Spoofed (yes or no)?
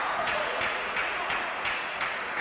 yes